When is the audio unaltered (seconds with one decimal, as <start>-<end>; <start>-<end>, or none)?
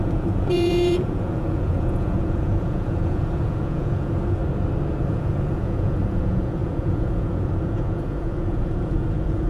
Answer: 4.4-5.0